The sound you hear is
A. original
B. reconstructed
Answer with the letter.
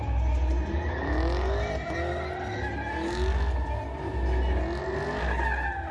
A